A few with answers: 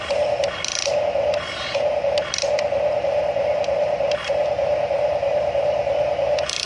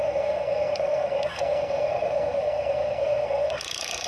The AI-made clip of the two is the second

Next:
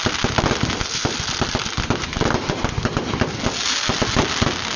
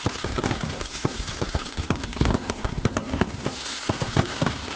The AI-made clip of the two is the second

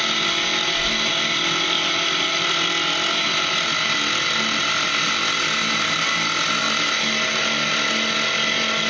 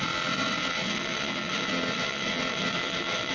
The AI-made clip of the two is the second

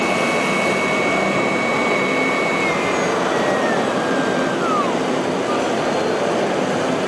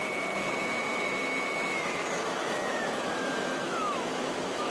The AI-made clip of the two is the second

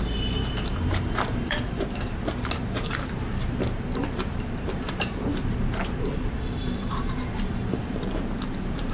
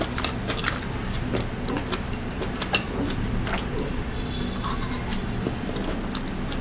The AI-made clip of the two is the first